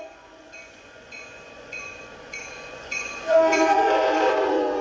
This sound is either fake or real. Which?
fake